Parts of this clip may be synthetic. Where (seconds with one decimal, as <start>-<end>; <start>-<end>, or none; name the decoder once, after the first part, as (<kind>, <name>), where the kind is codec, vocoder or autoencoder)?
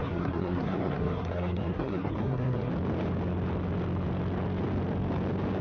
0.0-2.7 (codec, SNAC)